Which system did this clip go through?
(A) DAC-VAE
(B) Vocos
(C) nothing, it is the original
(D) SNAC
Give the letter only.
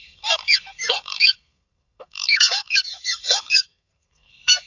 D